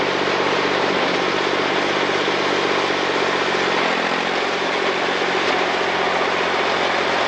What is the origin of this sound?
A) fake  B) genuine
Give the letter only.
B